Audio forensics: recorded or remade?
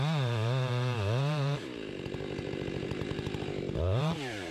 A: remade